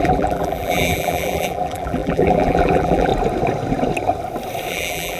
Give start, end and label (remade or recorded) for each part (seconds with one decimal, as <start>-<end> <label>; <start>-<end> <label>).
0.0-3.1 remade; 3.1-4.7 recorded; 4.7-5.2 remade